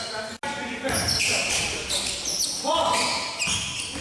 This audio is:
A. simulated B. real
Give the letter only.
B